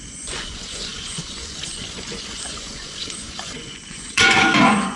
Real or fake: fake